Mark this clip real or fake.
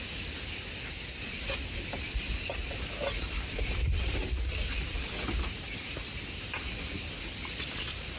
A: real